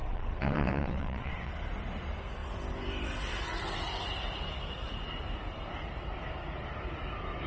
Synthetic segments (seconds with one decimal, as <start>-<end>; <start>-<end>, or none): 0.0-1.5